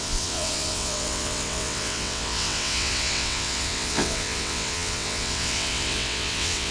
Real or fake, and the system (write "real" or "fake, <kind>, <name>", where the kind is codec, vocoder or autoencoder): fake, vocoder, WaveNeXt